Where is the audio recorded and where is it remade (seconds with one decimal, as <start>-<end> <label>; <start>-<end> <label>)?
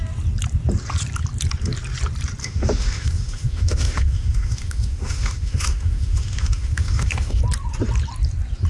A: 0.0-2.4 recorded; 2.4-7.4 remade; 7.4-8.7 recorded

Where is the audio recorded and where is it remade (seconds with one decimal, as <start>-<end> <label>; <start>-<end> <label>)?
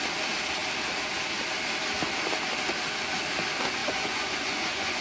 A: 0.0-3.8 recorded; 3.8-5.0 remade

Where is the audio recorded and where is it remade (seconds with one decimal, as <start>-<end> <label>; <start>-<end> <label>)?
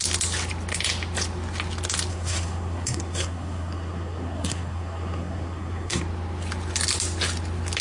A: 0.0-2.1 recorded; 2.1-6.0 remade; 6.0-7.8 recorded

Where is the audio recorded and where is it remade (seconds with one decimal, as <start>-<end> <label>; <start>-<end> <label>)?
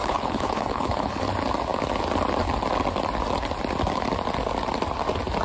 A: 0.0-1.2 remade; 1.2-5.4 recorded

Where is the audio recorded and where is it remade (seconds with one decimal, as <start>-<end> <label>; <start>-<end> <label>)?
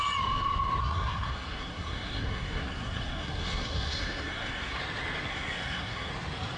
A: 0.0-0.8 recorded; 0.8-4.8 remade; 4.8-5.3 recorded; 5.3-6.1 remade; 6.1-6.6 recorded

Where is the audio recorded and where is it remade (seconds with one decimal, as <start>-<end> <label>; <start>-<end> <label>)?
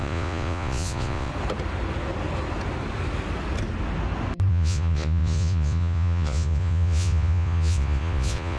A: 0.0-1.3 remade; 1.3-4.5 recorded; 4.5-8.6 remade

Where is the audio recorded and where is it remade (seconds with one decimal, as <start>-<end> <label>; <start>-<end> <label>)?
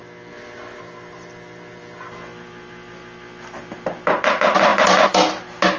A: 0.0-5.8 recorded